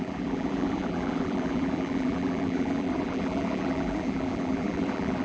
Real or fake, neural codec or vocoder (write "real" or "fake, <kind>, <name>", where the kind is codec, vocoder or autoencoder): fake, vocoder, BigVGAN v2